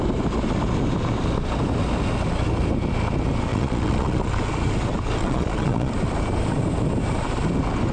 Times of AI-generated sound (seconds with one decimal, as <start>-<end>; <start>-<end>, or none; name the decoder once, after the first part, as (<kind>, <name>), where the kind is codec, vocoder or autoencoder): 3.5-4.3 (vocoder, Vocos); 5.2-5.9